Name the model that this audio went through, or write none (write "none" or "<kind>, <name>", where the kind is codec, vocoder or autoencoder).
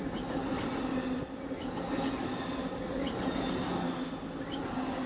none